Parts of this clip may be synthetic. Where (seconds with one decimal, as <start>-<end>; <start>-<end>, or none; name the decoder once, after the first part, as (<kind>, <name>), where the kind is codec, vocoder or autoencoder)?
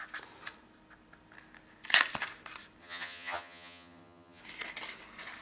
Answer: 2.8-4.4 (vocoder, HiFi-GAN)